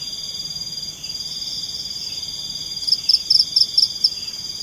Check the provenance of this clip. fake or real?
real